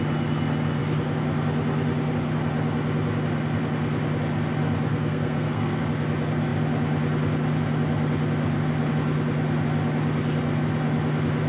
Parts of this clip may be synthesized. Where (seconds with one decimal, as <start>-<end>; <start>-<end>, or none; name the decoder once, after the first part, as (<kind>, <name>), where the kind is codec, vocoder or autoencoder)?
4.9-5.8 (codec, SNAC)